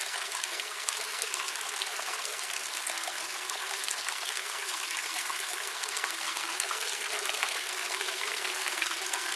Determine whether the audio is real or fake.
fake